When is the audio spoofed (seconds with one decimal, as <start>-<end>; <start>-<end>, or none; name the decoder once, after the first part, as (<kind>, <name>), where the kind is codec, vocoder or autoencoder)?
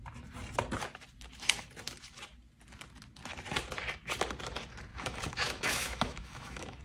4.9-6.8 (autoencoder, DAC-VAE)